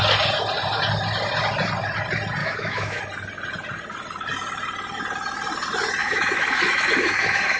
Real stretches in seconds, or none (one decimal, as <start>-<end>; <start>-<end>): 0.0-2.4; 3.0-6.0